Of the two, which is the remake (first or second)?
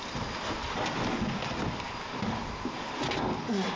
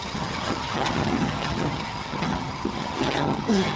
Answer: second